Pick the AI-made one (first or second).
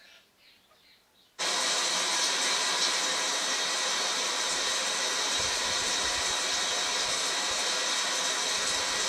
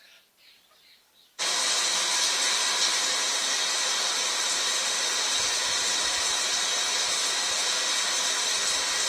second